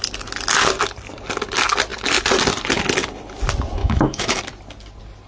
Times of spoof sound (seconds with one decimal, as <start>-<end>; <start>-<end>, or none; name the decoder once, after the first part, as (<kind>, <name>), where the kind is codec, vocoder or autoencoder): 3.8-4.4 (autoencoder, DAC-VAE)